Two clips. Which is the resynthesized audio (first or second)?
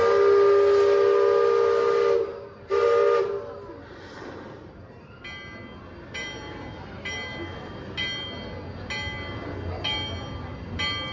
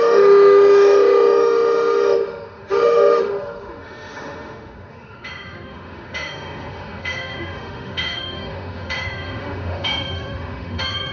second